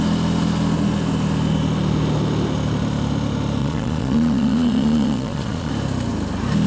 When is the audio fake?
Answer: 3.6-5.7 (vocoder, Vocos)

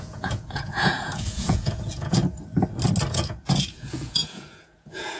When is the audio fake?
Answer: 0.0-2.2 (vocoder, Vocos); 3.1-5.2

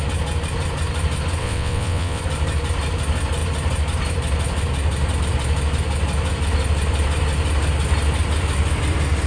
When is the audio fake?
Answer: 1.4-2.2 (vocoder, WaveNeXt)